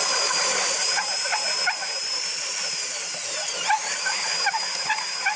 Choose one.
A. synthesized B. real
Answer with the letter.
A